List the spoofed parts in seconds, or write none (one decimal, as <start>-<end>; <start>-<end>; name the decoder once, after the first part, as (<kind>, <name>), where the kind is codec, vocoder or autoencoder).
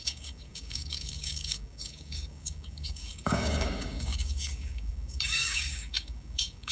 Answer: 0.0-6.7 (codec, DAC)